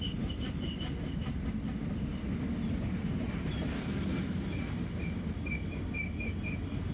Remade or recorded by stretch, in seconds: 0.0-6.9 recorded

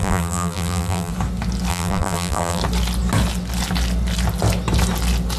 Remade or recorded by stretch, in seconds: 0.0-1.1 remade; 1.1-1.7 recorded; 1.7-2.6 remade; 2.6-5.4 recorded

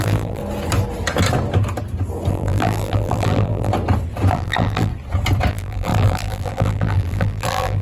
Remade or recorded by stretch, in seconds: 0.0-0.4 remade; 0.4-2.3 recorded; 2.3-3.7 remade; 3.7-4.3 recorded; 4.3-4.9 remade; 4.9-5.5 recorded; 5.5-7.8 remade

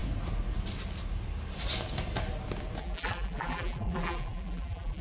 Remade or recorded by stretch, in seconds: 0.0-2.8 recorded; 2.8-5.0 remade

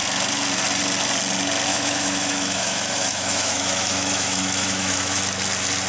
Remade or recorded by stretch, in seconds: 0.0-1.7 recorded; 1.7-5.2 remade; 5.2-5.9 recorded

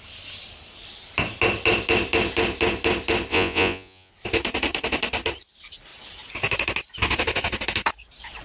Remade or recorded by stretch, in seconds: 0.0-3.3 recorded; 3.3-4.1 remade; 4.1-8.4 recorded

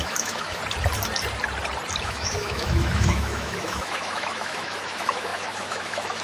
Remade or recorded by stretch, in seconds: 0.0-0.6 remade; 0.6-2.0 recorded; 2.0-6.2 remade

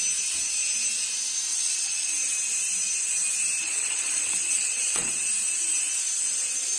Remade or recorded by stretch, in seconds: 0.0-1.5 recorded; 1.5-2.1 remade; 2.1-3.6 recorded; 3.6-5.1 remade; 5.1-6.8 recorded